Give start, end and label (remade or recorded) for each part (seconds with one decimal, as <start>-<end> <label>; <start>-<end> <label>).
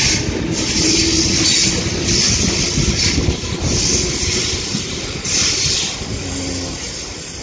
0.0-7.4 recorded